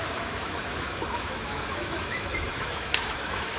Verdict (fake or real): fake